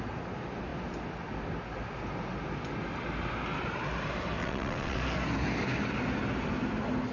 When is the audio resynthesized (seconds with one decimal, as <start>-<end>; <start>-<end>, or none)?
4.4-5.0